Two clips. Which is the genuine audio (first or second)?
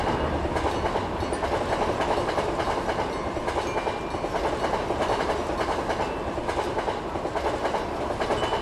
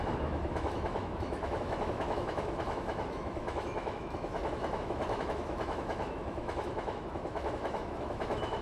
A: first